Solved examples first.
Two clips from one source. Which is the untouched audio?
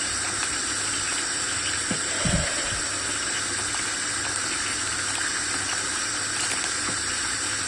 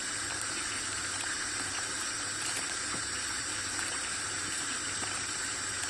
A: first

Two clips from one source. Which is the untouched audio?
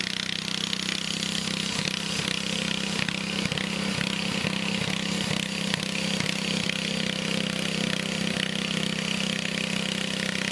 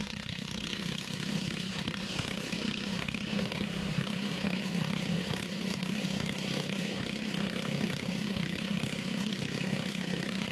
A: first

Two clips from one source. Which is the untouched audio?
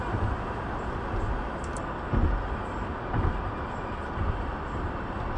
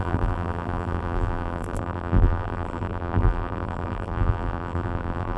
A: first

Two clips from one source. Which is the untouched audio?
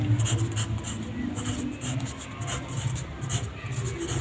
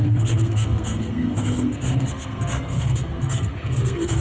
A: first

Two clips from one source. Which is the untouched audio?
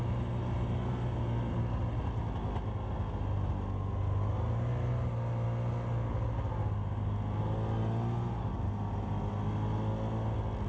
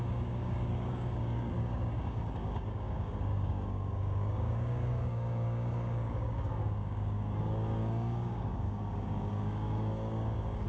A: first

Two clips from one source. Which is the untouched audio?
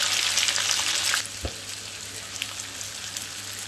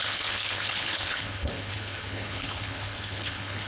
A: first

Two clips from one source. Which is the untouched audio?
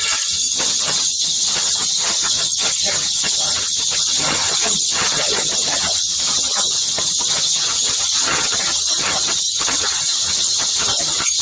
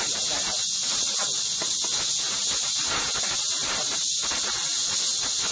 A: second